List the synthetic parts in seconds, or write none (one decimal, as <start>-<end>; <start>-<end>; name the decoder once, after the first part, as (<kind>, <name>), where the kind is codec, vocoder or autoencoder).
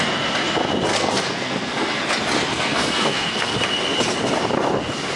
0.9-2.0 (codec, SNAC); 2.5-3.6